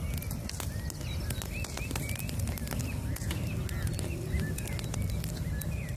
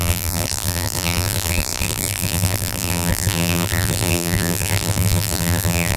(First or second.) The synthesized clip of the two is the second